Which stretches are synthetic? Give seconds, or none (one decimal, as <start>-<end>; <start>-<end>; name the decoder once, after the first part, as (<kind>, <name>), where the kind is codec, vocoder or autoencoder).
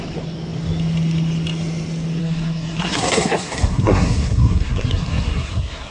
2.2-5.9 (codec, SNAC)